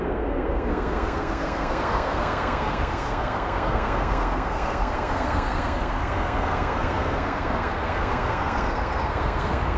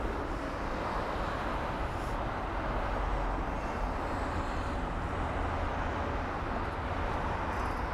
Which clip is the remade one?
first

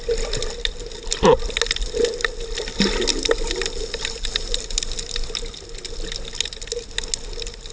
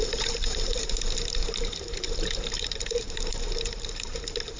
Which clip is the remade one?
second